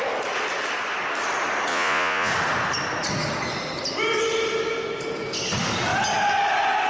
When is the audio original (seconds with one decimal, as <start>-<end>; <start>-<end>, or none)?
0.0-1.7; 2.3-6.9